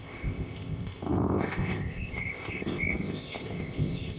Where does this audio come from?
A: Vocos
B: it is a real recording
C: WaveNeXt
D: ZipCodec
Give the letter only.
D